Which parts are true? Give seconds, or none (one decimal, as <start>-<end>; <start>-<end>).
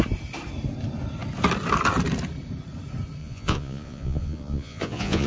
0.0-3.2